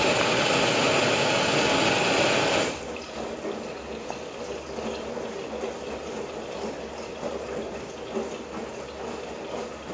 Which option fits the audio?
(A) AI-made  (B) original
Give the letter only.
B